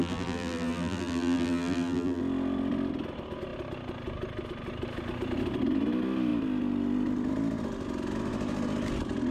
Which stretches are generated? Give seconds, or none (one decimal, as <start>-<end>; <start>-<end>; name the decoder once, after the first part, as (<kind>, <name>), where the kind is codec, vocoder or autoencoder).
0.0-2.2 (vocoder, BigVGAN v2)

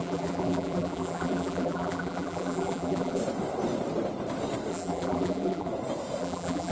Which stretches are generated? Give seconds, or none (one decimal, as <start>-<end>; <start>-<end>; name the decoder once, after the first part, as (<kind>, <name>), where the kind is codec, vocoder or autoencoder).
0.0-3.2 (vocoder, BigVGAN v2); 4.7-5.7; 6.2-6.7

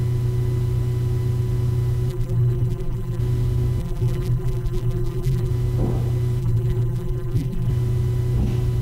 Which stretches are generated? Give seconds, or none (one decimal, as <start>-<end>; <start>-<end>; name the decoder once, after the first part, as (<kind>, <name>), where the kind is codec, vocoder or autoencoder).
2.1-3.2 (vocoder, BigVGAN v2); 3.8-5.5; 6.4-7.7

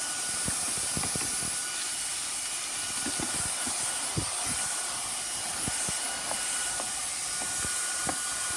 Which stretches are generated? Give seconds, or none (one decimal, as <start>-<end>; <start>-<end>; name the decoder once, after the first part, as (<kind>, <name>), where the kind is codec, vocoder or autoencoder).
none

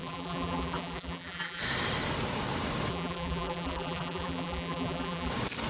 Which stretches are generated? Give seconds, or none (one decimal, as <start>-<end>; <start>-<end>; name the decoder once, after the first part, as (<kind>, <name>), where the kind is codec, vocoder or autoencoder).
0.0-1.6 (vocoder, BigVGAN v2); 2.9-5.3

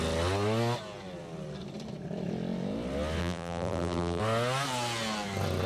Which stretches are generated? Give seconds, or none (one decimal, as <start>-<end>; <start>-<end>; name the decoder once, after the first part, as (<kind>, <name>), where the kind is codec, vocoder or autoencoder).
3.2-4.2 (vocoder, BigVGAN v2)

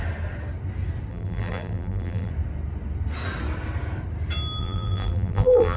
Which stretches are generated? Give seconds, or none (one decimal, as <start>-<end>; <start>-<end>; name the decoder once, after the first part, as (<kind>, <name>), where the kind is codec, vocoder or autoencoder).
1.1-2.3 (vocoder, BigVGAN v2); 4.6-5.8